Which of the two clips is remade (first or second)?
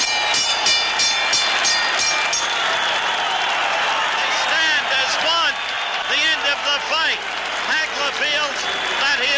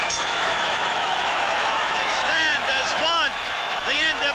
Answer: second